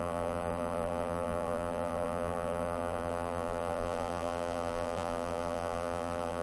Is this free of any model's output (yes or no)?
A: no